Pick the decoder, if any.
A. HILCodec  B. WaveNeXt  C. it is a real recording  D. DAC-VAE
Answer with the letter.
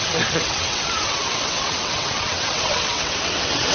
B